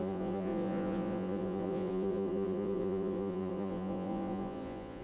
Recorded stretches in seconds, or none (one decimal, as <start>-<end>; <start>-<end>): none